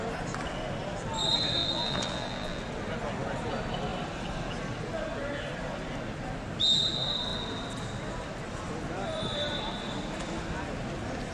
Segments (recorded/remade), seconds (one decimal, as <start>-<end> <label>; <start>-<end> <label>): 0.0-1.6 recorded; 1.6-2.6 remade; 2.6-11.3 recorded